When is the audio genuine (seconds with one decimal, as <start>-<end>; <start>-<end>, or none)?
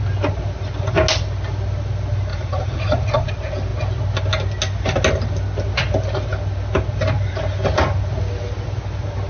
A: 0.0-2.3; 3.3-9.3